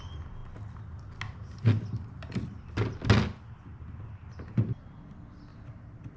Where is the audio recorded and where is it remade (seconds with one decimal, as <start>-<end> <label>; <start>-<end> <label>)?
0.0-6.2 recorded